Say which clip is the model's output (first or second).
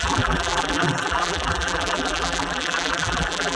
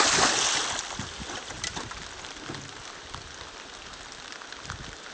first